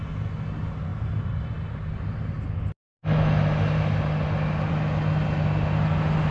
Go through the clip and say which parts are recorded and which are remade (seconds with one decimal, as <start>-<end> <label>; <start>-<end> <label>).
0.0-6.3 recorded